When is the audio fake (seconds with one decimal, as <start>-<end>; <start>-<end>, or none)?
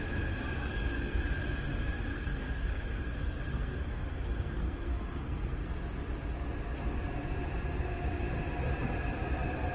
0.6-1.2; 2.1-5.7